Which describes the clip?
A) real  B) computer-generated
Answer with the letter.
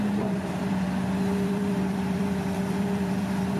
B